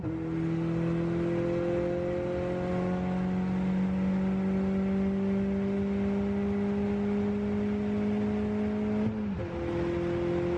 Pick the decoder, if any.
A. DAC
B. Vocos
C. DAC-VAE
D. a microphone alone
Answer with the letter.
D